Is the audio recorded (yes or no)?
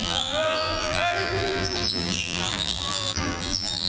no